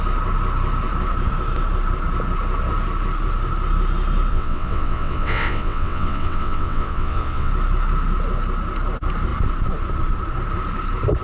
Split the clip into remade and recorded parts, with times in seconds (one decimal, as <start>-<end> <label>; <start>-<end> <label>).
0.0-4.3 recorded; 4.3-7.5 remade; 7.5-11.2 recorded